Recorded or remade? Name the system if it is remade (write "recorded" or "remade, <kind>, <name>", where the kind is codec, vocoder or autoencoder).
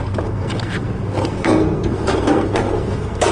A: remade, codec, SNAC